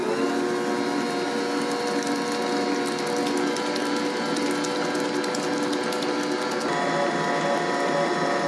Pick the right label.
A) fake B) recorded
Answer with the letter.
B